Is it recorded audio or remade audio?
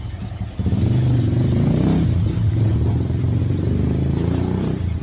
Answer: recorded